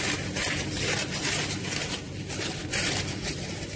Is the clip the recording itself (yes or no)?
yes